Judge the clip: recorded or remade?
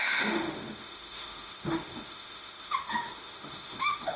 remade